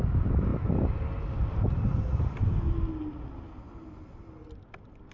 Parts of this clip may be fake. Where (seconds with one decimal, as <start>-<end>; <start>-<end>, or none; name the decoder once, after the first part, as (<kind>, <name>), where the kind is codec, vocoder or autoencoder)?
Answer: none